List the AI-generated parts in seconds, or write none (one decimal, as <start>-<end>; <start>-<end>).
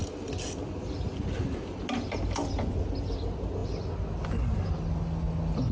none